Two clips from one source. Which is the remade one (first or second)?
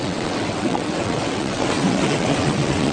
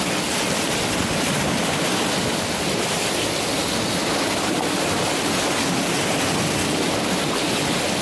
first